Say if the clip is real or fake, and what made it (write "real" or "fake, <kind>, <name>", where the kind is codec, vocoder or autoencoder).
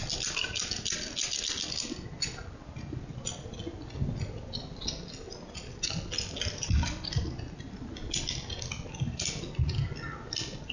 real